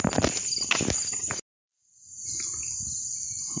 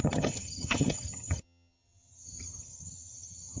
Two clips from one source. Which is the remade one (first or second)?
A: second